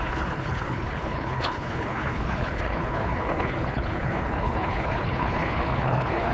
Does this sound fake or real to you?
fake